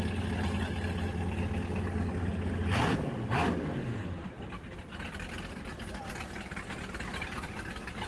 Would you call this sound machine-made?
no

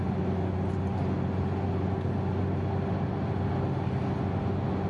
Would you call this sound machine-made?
no